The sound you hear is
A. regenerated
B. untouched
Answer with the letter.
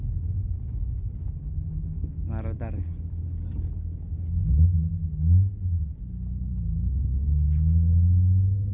B